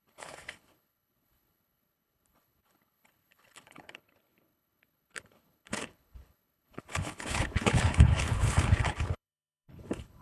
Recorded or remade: remade